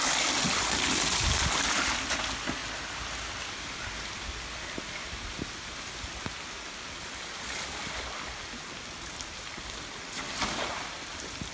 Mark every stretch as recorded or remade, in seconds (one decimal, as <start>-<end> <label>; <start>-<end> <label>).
0.0-11.5 recorded